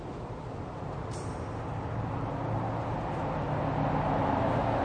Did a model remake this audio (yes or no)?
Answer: no